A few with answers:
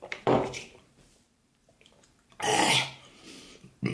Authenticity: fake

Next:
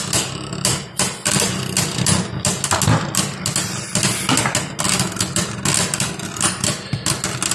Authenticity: real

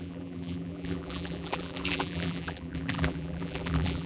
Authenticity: fake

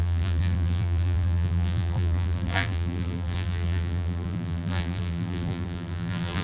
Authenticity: fake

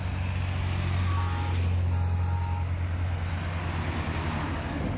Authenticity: real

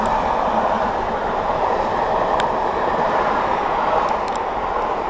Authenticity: real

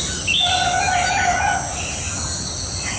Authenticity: real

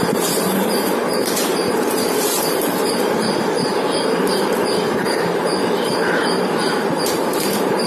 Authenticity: fake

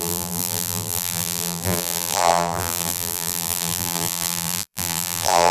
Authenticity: fake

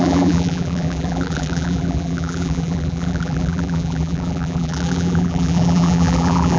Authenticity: fake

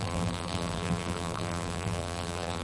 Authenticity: fake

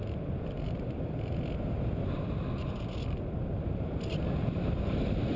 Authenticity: real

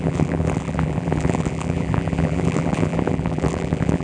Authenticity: fake